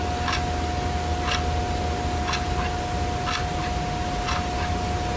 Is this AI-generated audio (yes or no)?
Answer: no